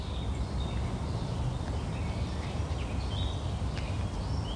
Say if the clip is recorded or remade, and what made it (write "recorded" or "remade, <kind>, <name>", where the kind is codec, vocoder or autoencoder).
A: recorded